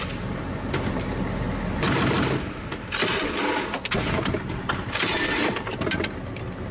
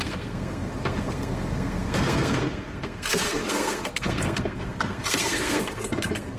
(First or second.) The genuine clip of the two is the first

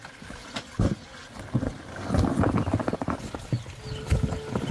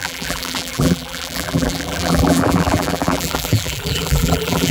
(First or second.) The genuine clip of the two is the first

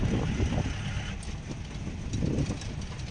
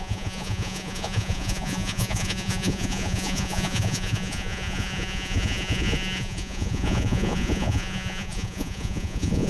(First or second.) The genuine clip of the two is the first